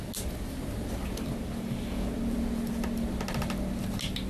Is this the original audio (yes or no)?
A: yes